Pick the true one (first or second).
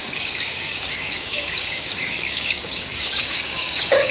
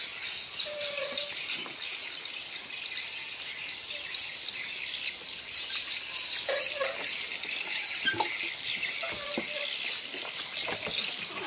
second